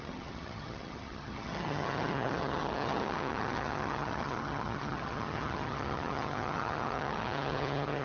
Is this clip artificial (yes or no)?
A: yes